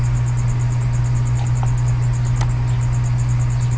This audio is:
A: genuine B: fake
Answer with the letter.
A